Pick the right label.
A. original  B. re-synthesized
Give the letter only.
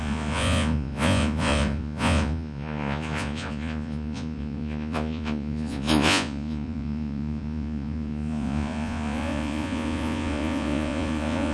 B